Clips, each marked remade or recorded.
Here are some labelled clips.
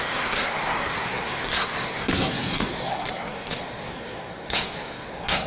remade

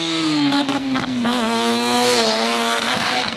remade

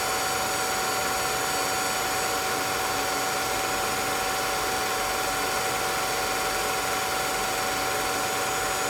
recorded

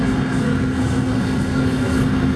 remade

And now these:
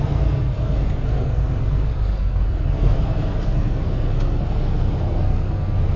remade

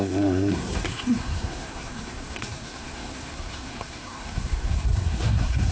remade